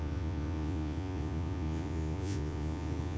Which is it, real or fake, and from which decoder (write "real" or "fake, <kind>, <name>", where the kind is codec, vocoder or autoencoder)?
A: fake, vocoder, Vocos